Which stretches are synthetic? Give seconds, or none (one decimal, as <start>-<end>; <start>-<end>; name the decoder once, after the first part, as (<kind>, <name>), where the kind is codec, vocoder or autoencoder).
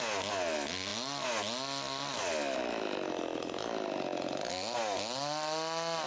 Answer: none